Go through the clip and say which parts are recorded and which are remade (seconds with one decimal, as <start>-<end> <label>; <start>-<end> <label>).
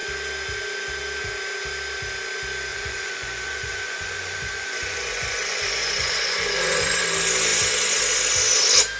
0.0-2.7 recorded; 2.7-7.0 remade; 7.0-9.0 recorded